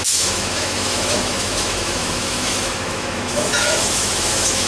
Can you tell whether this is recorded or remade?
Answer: remade